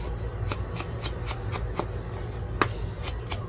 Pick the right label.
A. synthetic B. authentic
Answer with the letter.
B